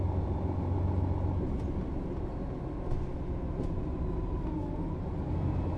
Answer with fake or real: real